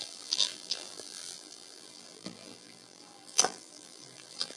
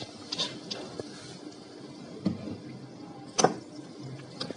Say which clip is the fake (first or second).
first